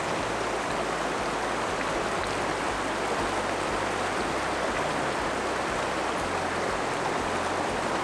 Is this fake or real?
real